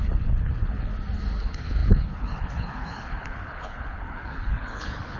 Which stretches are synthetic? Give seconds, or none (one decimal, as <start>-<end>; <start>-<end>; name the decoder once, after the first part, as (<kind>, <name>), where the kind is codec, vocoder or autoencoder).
0.0-0.9 (codec, HILCodec); 1.4-5.2